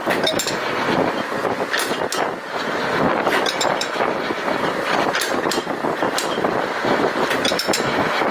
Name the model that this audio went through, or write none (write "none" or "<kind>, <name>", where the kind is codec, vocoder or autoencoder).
vocoder, BigVGAN v2